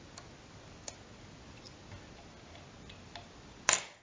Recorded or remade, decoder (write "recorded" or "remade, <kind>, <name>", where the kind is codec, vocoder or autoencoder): recorded